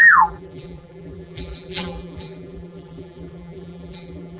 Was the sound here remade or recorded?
remade